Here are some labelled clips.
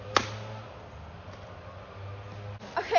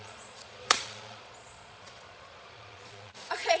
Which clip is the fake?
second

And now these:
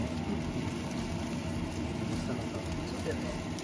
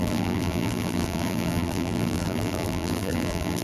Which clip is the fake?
second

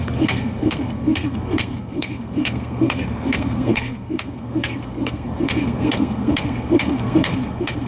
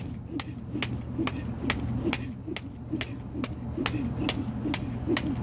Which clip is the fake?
first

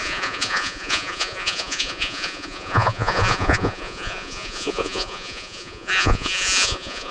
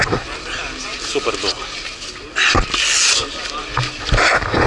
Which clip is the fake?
first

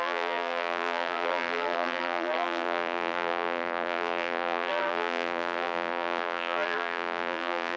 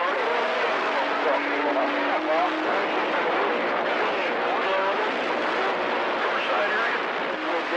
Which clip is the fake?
first